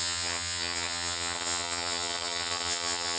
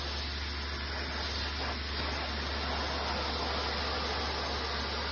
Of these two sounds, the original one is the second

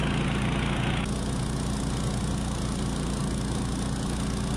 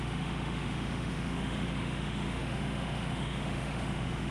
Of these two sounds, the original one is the first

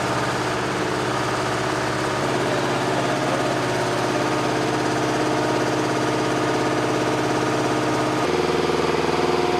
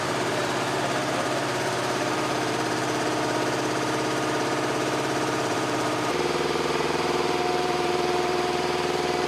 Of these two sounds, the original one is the first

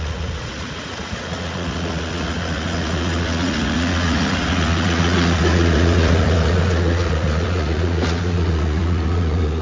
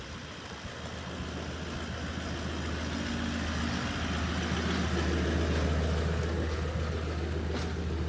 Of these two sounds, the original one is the second